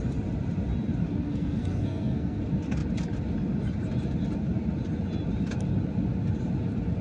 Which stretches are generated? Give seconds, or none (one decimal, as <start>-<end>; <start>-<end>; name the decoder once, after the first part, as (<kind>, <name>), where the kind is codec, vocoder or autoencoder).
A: 1.0-2.4 (codec, SNAC)